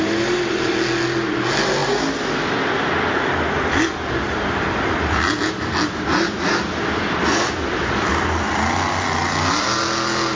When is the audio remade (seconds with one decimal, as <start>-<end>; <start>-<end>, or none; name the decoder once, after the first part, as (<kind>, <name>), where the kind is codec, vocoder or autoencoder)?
none